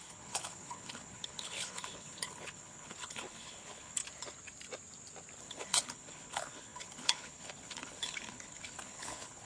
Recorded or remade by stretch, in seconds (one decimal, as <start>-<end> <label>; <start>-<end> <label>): 0.0-4.0 remade; 4.0-5.4 recorded; 5.4-9.5 remade